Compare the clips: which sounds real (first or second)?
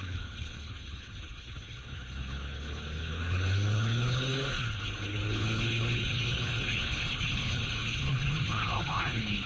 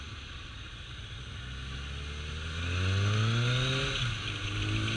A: second